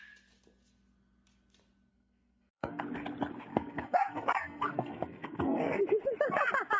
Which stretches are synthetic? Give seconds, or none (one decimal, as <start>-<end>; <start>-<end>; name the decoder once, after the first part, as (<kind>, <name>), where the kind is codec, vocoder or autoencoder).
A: 1.9-2.8 (codec, SNAC); 3.5-5.8